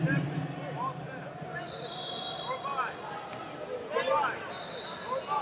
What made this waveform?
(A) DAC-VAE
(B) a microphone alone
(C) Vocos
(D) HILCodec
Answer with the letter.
B